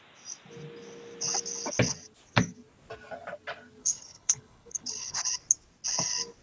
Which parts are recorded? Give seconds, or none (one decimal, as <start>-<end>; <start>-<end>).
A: 0.0-3.8; 5.2-6.4